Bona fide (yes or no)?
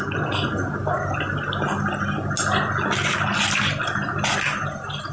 yes